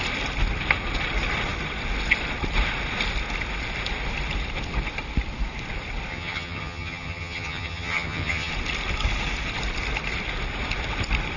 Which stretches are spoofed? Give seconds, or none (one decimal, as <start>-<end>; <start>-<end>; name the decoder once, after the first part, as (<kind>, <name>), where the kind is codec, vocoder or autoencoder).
6.1-8.5 (vocoder, HiFi-GAN)